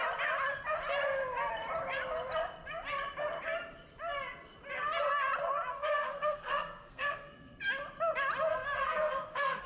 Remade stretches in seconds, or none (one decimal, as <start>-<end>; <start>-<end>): 5.7-7.6; 8.5-9.7